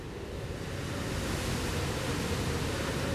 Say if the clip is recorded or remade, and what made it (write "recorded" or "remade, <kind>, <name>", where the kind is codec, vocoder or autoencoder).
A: recorded